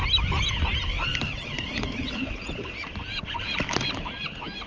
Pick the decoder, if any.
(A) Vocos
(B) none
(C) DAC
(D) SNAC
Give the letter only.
B